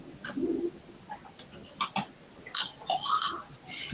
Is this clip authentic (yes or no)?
yes